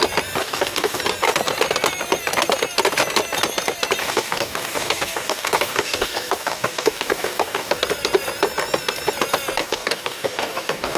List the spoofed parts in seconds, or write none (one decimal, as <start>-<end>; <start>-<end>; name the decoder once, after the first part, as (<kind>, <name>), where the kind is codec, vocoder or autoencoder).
0.4-1.0 (codec, DAC); 4.0-7.8; 9.6-11.0